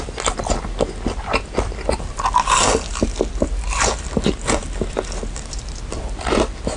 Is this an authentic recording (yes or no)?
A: yes